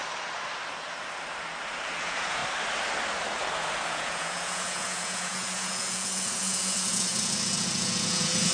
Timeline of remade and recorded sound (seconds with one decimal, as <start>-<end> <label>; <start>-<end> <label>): 0.0-2.0 recorded; 2.0-2.4 remade; 2.4-3.9 recorded; 3.9-8.5 remade